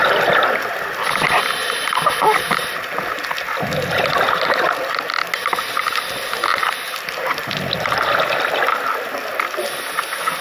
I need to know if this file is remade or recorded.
recorded